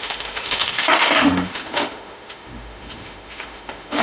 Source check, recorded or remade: remade